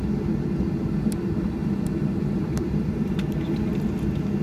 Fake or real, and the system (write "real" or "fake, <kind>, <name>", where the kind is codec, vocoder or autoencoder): real